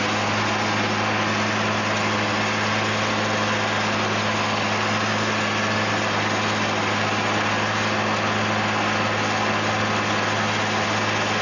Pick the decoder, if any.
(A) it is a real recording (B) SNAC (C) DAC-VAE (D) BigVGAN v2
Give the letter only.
A